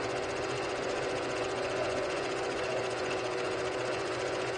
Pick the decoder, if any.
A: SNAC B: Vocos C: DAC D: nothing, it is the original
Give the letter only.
B